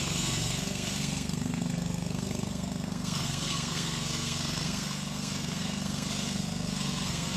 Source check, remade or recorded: remade